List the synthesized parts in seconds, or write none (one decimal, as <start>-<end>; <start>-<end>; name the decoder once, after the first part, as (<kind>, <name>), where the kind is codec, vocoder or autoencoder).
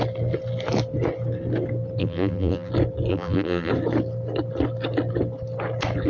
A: 2.0-2.7 (vocoder, BigVGAN v2); 3.1-3.7